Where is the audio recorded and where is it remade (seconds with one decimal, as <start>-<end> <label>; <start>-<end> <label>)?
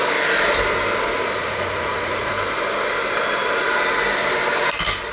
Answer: 0.0-1.4 recorded; 1.4-2.3 remade; 2.3-5.1 recorded